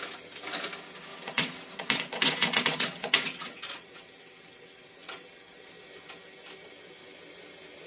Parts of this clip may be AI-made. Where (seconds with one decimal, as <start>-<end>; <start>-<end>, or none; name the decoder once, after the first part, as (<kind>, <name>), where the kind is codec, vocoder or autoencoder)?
1.1-5.7 (vocoder, WaveNeXt)